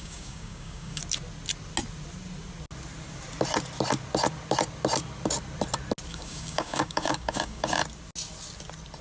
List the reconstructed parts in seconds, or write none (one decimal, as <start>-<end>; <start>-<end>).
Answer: 0.0-1.0; 6.1-7.8

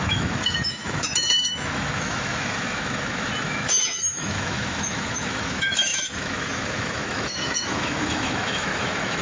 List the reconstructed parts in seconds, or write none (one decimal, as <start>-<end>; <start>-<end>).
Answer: 0.0-9.2

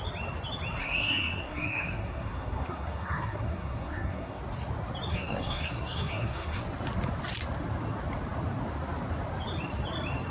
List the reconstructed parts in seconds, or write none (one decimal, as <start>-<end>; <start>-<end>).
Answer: 0.8-4.4; 5.1-6.6

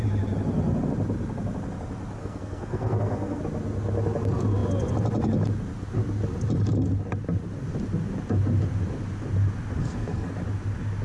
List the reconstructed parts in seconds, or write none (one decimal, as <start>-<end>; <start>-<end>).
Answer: 2.2-3.4; 9.8-10.3

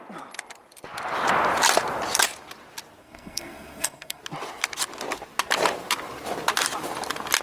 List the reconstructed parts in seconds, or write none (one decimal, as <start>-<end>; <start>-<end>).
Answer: 3.0-4.2